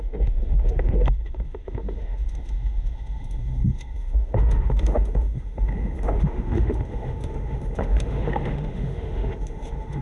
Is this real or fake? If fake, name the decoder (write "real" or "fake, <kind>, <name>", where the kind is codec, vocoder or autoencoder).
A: fake, autoencoder, DAC-VAE